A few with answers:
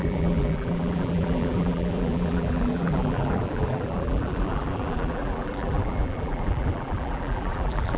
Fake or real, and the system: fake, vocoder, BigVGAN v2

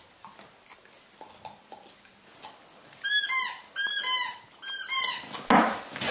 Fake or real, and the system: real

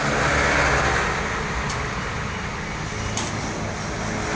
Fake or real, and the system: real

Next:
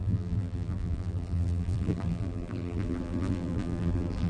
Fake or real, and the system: fake, vocoder, BigVGAN v2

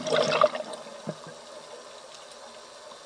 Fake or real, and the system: real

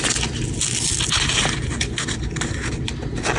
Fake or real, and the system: real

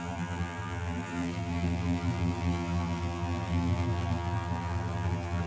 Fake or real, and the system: fake, vocoder, BigVGAN v2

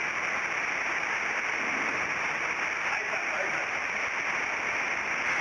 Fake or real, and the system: real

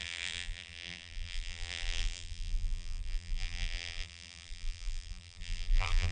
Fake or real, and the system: fake, vocoder, BigVGAN v2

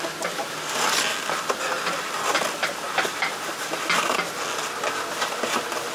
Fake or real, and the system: real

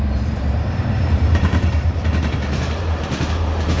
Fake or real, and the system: fake, vocoder, BigVGAN v2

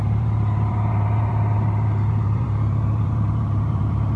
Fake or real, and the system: fake, vocoder, BigVGAN v2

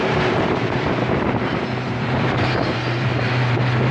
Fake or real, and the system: fake, vocoder, BigVGAN v2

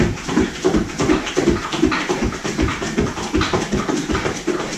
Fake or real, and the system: fake, vocoder, BigVGAN v2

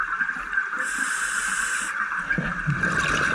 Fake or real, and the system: real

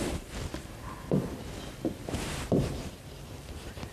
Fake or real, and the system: fake, vocoder, BigVGAN v2